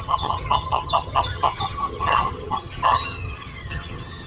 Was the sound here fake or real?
fake